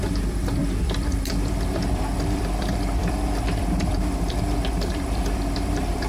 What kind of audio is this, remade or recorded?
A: remade